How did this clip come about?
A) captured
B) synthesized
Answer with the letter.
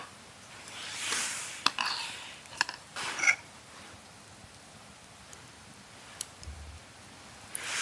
B